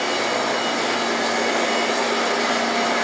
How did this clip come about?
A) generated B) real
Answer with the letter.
B